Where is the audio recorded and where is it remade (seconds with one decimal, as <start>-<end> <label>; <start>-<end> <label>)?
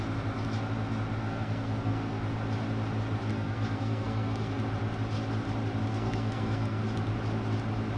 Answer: 0.0-1.2 recorded; 1.2-2.2 remade; 2.2-3.3 recorded; 3.3-4.6 remade; 4.6-5.9 recorded; 5.9-6.8 remade; 6.8-8.0 recorded